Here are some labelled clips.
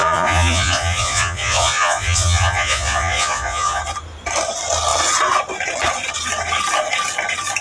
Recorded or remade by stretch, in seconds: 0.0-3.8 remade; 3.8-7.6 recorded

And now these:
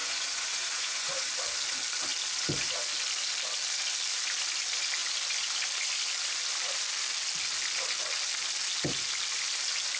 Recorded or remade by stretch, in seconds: 0.0-1.3 remade; 1.3-10.0 recorded

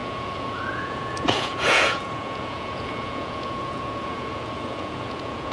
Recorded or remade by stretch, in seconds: 0.0-5.5 remade